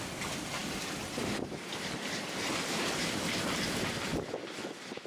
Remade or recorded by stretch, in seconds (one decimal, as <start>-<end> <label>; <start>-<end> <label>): 0.0-0.6 recorded; 0.6-2.3 remade; 2.3-5.1 recorded

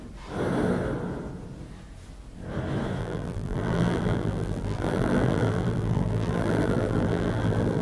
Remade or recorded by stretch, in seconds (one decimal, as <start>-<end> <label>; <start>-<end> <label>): 0.0-3.0 recorded; 3.0-7.8 remade